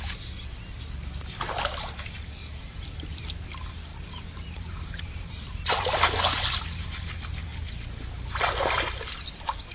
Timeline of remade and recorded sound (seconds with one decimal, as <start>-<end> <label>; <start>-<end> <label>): 0.0-9.7 recorded